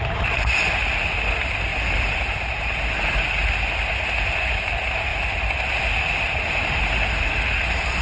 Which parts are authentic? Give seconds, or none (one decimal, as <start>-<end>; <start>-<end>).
0.0-8.0